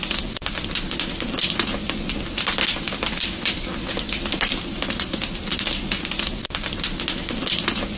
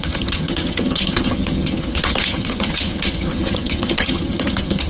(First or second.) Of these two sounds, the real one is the first